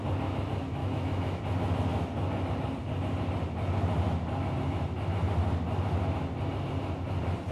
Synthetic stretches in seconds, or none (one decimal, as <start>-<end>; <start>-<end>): 0.8-1.4